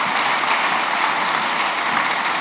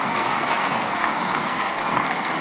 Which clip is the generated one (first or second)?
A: second